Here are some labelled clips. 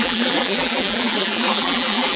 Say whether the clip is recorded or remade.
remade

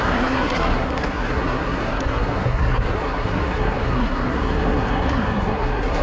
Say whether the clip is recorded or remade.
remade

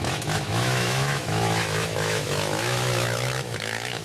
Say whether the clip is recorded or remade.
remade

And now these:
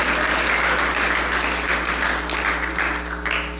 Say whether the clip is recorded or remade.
recorded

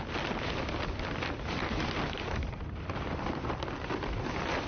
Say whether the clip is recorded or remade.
recorded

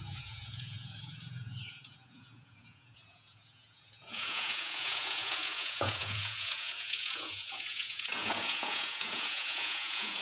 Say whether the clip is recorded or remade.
remade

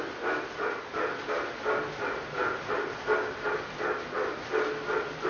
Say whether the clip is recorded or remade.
recorded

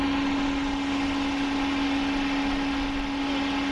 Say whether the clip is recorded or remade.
recorded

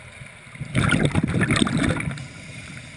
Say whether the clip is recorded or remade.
recorded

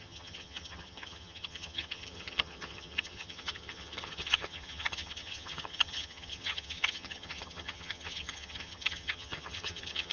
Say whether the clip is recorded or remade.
remade